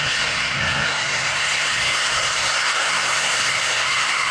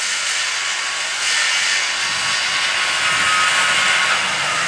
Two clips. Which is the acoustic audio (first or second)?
second